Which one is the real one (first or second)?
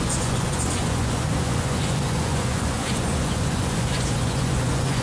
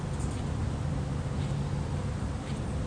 second